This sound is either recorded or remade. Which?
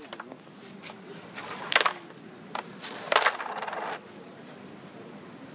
recorded